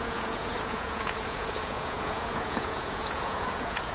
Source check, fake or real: fake